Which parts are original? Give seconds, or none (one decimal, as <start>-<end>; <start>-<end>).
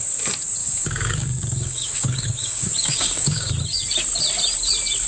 0.0-0.6; 3.5-5.1